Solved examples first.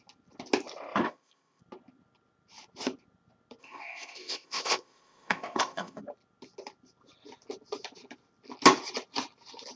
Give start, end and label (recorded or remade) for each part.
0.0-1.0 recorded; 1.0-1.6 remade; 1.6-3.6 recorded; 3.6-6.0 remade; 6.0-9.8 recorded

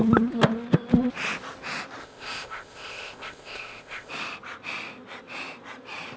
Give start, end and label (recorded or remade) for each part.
0.0-2.0 recorded; 2.0-4.1 remade; 4.1-6.2 recorded

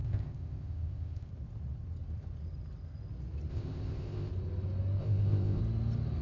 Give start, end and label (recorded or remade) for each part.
0.0-1.3 remade; 1.3-3.5 recorded; 3.5-4.3 remade; 4.3-5.0 recorded; 5.0-5.6 remade; 5.6-6.2 recorded

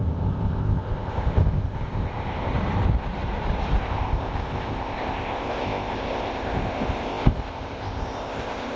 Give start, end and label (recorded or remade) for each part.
0.0-2.5 remade; 2.5-3.8 recorded; 3.8-8.8 remade

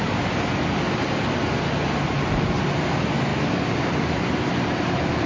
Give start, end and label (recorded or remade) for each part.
0.0-5.3 recorded

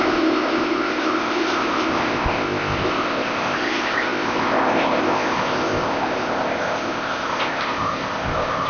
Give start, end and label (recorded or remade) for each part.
0.0-8.7 remade